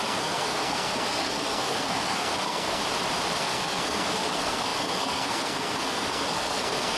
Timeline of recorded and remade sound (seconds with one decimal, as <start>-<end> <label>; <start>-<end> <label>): 0.0-2.8 remade; 2.8-3.4 recorded; 3.4-7.0 remade